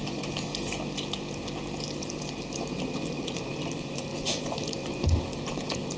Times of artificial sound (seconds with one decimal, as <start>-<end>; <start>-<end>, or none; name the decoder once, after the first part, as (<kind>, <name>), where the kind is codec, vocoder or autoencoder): 0.0-0.5 (vocoder, BigVGAN v2); 2.0-6.0